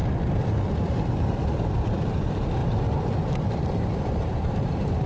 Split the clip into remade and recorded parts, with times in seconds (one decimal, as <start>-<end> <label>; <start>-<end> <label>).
0.0-0.7 recorded; 0.7-2.6 remade; 2.6-3.4 recorded; 3.4-5.1 remade

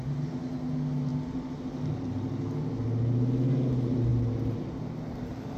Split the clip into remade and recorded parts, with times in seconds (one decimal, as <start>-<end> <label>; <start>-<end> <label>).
0.0-5.6 recorded